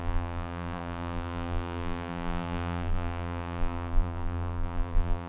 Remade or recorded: remade